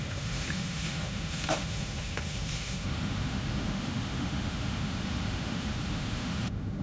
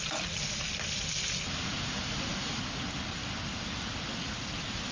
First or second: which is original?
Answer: second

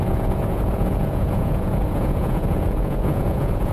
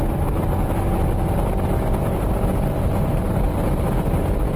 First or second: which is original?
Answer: second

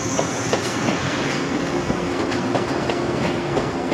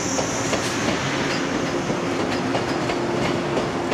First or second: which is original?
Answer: second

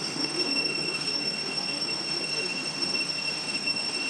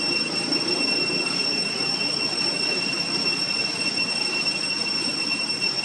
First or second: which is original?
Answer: second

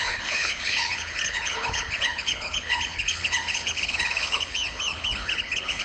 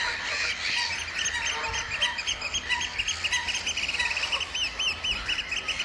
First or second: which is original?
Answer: second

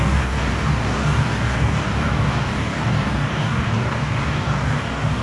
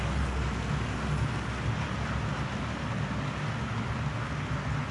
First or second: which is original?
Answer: second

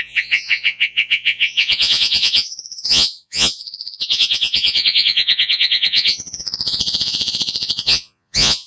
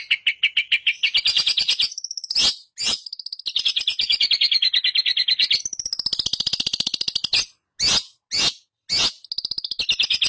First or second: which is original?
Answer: second